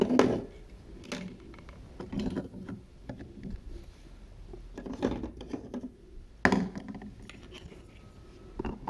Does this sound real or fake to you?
real